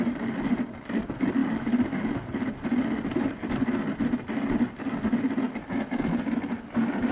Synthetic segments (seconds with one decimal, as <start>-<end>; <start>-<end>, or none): none